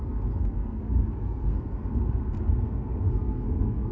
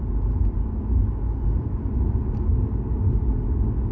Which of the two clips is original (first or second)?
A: second